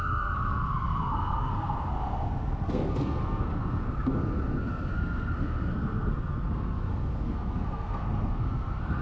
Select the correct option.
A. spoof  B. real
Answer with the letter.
A